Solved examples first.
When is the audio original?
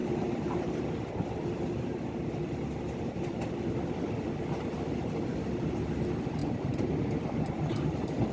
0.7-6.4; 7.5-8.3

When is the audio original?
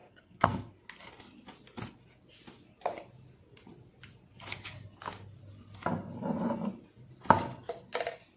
0.7-8.4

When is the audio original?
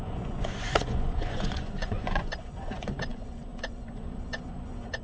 none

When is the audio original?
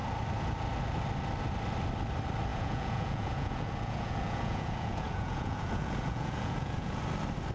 0.0-2.5; 7.0-7.5